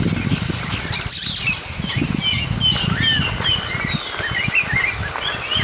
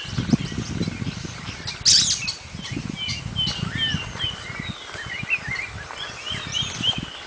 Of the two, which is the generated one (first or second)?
first